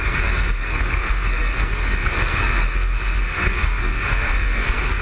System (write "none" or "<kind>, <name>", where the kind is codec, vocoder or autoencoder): codec, SNAC